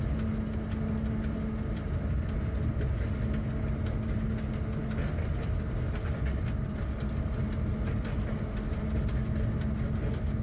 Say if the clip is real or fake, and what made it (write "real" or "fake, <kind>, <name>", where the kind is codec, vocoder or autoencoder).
real